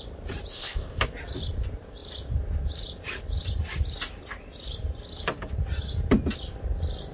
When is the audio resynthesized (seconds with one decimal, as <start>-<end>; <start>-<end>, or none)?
0.5-1.0